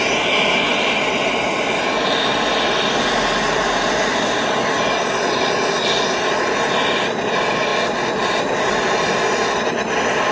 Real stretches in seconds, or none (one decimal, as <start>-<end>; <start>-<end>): 0.0-10.3